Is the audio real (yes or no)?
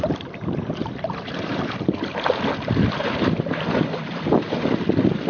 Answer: no